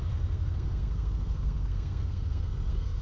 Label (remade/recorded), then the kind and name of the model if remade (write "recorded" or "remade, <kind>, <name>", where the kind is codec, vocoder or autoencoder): remade, codec, SNAC